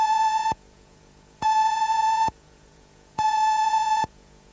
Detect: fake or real fake